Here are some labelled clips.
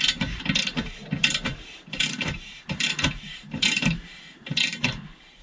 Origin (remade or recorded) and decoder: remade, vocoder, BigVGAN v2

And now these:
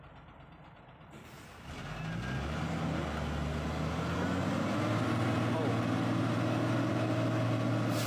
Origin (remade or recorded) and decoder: recorded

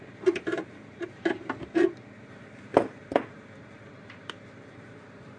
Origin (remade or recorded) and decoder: remade, vocoder, BigVGAN v2